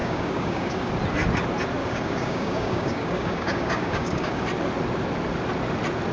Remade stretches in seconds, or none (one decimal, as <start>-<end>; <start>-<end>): 0.0-0.9; 1.8-4.4